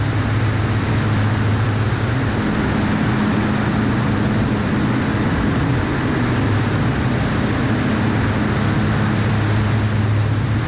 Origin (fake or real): real